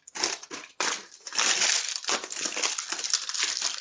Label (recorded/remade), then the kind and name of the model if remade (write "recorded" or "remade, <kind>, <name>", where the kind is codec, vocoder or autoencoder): remade, vocoder, BigVGAN v2